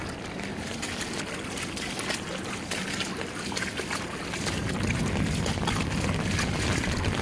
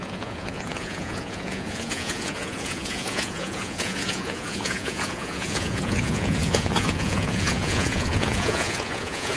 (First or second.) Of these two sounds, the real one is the first